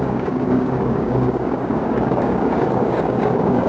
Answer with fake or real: fake